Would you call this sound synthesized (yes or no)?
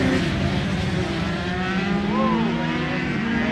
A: no